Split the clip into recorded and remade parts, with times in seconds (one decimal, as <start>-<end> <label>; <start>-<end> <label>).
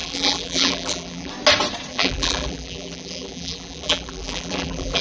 0.0-1.3 remade; 1.3-1.9 recorded; 1.9-5.0 remade